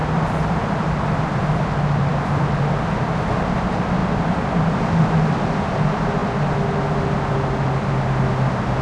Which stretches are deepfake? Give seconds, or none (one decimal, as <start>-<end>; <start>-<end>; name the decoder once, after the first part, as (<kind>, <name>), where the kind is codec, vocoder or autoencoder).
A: 0.0-1.7 (vocoder, BigVGAN v2); 4.0-5.8